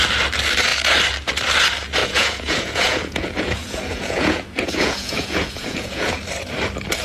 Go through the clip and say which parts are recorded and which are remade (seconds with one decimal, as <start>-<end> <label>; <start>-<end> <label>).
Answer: 0.0-2.0 recorded; 2.0-6.2 remade; 6.2-7.0 recorded